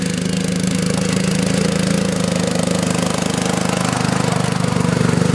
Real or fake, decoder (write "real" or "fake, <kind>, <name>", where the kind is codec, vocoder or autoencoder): real